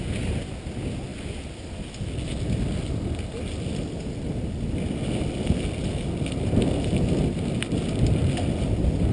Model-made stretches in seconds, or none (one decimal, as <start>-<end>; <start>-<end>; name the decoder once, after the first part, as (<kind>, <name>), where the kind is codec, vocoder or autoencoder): none